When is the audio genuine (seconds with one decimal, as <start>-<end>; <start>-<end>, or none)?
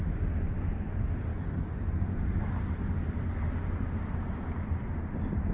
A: 0.0-5.5